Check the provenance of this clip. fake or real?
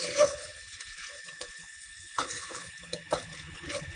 fake